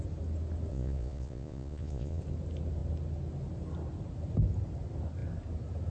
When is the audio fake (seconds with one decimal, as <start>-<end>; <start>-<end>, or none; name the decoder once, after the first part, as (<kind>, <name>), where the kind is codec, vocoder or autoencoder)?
0.7-2.2 (vocoder, Vocos)